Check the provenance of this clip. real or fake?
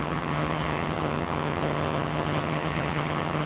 fake